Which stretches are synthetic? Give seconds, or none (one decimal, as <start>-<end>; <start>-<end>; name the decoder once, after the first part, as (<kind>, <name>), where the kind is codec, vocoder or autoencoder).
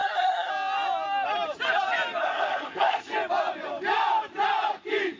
0.0-0.5 (codec, SNAC); 2.2-3.1